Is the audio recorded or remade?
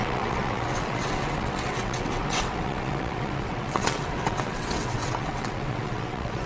remade